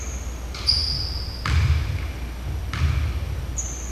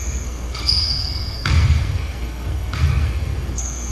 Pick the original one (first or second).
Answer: first